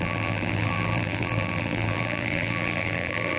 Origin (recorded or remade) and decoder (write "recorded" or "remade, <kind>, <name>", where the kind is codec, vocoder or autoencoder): remade, vocoder, BigVGAN v2